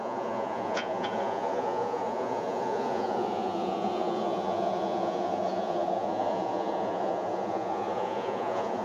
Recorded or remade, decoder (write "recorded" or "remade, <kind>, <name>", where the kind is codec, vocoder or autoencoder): remade, vocoder, Vocos